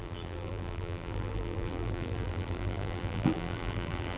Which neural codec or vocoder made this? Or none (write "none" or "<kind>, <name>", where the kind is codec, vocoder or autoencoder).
vocoder, BigVGAN v2